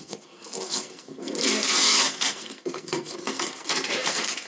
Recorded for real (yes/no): no